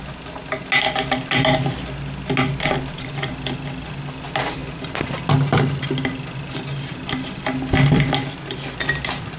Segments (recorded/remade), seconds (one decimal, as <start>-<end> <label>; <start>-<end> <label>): 0.0-9.4 recorded